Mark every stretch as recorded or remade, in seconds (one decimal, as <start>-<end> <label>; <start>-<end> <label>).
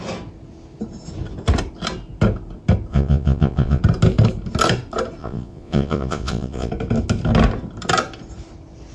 0.0-2.9 recorded; 2.9-3.8 remade; 3.8-5.2 recorded; 5.2-6.7 remade; 6.7-8.9 recorded